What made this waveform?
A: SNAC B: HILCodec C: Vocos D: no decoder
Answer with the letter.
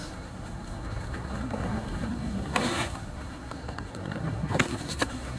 A